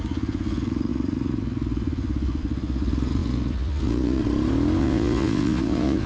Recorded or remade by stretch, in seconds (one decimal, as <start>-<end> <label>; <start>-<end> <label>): 0.0-4.2 remade; 4.2-4.8 recorded; 4.8-6.1 remade